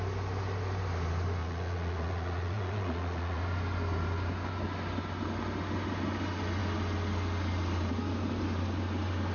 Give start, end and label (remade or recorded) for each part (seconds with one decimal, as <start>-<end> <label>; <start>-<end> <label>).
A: 0.0-1.4 recorded; 1.4-3.4 remade; 3.4-9.3 recorded